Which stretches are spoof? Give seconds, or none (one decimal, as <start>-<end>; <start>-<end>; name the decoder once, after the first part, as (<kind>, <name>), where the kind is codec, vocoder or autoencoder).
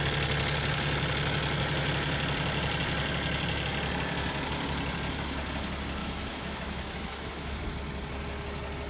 6.0-7.6 (autoencoder, DAC-VAE)